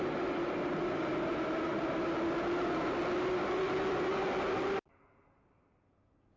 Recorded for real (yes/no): yes